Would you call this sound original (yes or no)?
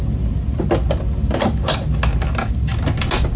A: yes